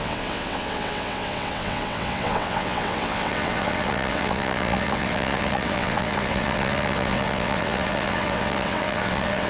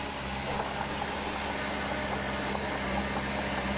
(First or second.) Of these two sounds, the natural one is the second